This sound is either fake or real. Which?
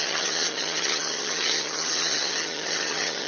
fake